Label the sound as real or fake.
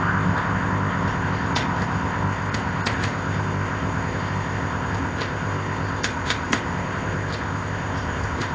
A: fake